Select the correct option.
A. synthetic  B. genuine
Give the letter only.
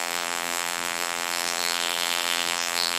A